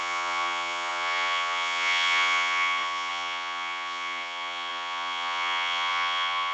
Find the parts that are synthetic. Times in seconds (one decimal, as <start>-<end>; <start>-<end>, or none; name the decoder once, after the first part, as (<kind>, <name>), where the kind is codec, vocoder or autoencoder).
0.0-6.5 (vocoder, Vocos)